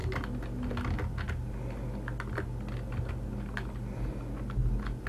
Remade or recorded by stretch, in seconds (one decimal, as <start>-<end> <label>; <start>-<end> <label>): 0.0-5.1 recorded